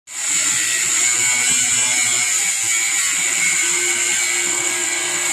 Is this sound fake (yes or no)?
no